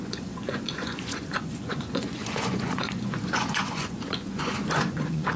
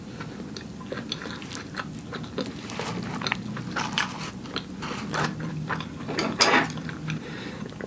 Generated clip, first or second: first